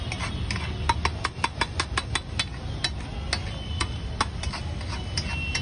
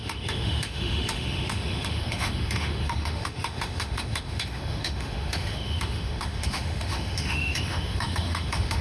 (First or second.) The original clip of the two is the first